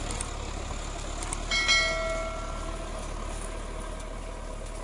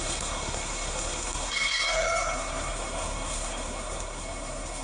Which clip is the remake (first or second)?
second